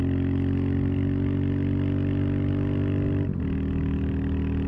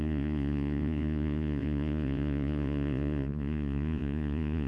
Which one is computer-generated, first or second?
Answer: second